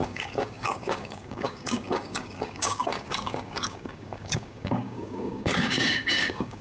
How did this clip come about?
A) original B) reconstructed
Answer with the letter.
B